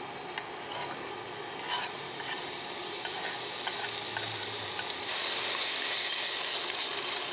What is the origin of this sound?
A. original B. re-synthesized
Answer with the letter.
A